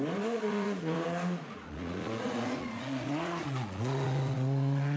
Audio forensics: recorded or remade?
remade